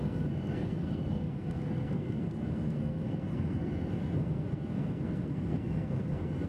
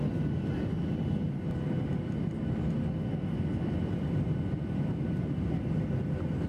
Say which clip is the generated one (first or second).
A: first